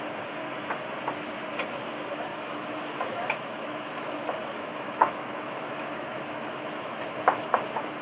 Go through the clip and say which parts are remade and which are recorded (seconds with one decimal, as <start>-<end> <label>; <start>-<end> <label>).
0.0-2.3 recorded; 2.3-7.1 remade; 7.1-8.0 recorded